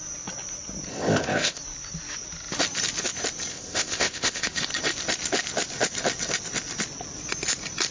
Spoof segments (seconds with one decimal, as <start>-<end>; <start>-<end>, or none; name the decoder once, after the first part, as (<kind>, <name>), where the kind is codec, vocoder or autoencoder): 0.9-1.6 (codec, ZipCodec); 3.5-4.6